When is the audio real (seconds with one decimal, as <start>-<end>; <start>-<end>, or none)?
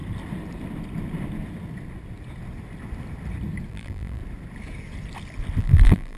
0.0-3.7; 4.2-5.6